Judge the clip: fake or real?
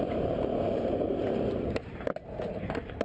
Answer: fake